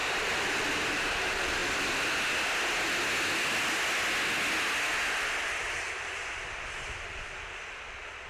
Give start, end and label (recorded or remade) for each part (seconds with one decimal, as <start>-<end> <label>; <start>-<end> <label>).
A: 0.0-1.6 remade; 1.6-4.9 recorded; 4.9-8.3 remade